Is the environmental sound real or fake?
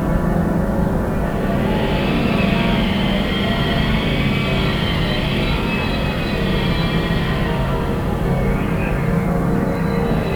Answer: real